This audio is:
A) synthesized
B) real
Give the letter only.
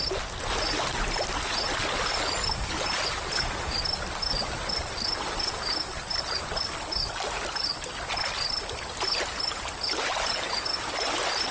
B